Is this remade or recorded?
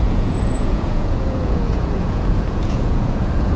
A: remade